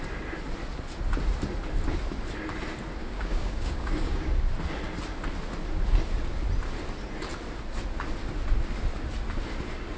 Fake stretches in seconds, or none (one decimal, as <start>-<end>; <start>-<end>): 3.0-4.3